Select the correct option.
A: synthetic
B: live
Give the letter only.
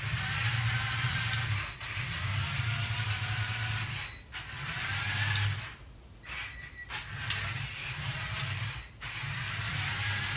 B